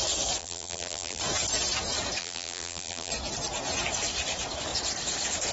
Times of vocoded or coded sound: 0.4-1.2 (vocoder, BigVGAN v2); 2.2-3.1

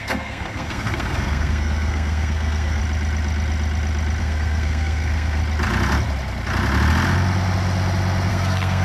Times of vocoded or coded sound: 0.0-2.8 (codec, SNAC); 4.2-5.4; 8.3-8.8

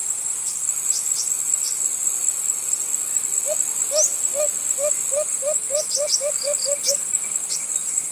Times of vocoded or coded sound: 0.0-0.5 (vocoder, BigVGAN v2)

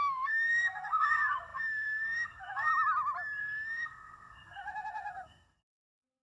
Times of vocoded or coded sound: 0.0-2.7 (codec, SNAC); 3.4-6.2

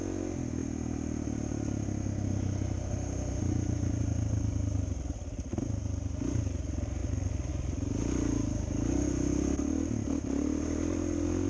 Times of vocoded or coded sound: none

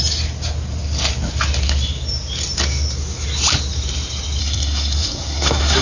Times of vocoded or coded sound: 4.4-5.8 (codec, SNAC)